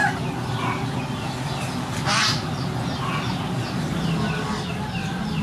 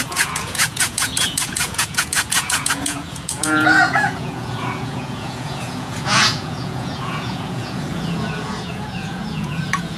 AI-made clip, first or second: second